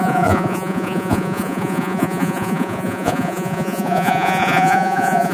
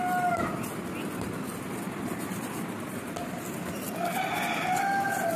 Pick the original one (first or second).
second